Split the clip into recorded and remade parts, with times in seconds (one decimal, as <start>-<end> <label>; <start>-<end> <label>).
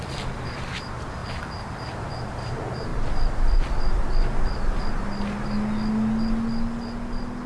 0.0-2.9 remade; 2.9-7.5 recorded